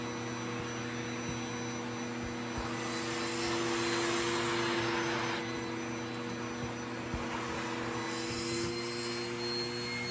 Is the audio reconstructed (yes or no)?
no